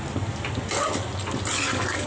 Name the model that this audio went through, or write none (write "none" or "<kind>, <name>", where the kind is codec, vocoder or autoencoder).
none